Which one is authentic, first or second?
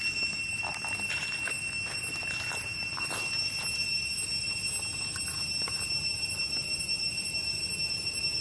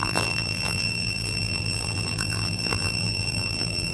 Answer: first